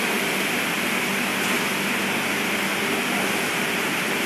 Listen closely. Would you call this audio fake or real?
real